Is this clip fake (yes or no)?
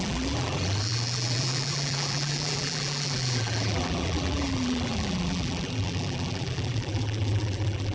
yes